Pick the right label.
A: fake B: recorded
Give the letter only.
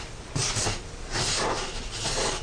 B